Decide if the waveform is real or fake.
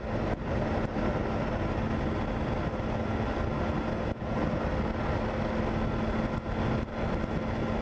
real